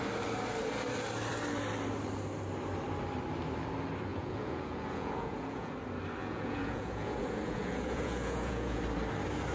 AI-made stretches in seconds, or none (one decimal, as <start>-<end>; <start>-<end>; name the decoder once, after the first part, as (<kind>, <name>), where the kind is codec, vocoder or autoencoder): 4.1-5.7 (vocoder, Vocos); 6.2-8.8